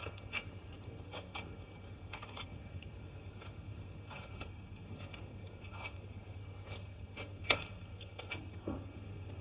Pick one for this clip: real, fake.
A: fake